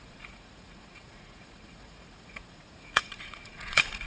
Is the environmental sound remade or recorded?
remade